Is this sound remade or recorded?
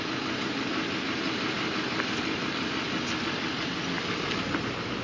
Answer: recorded